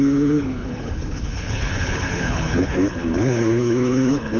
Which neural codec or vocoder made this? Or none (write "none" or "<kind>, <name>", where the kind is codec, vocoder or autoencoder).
codec, HILCodec